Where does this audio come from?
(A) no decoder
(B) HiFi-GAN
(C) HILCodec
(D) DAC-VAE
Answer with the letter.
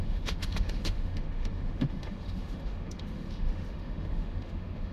D